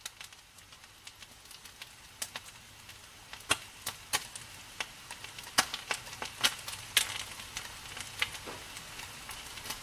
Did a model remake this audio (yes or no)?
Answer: no